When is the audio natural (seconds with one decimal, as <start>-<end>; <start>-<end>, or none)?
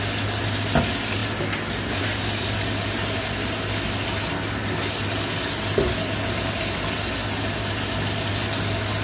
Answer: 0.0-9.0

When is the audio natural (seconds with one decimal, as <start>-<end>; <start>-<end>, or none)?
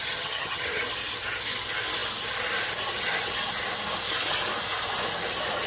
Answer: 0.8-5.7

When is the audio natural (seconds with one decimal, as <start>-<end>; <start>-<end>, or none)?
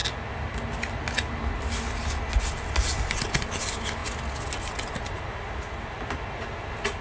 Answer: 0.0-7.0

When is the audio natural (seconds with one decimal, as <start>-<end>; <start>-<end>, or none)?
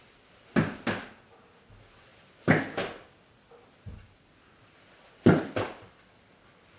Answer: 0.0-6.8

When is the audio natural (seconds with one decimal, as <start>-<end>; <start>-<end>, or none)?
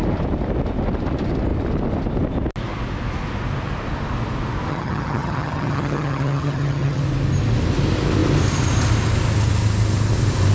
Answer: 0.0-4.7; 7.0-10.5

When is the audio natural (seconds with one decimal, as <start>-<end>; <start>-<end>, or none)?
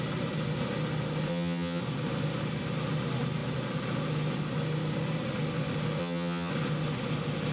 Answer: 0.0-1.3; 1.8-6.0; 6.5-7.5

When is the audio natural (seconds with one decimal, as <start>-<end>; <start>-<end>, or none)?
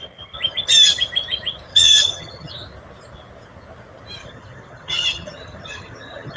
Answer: 0.0-1.7; 2.5-4.2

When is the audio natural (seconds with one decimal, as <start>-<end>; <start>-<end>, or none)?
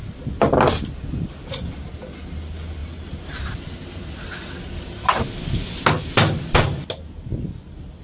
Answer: 0.0-8.0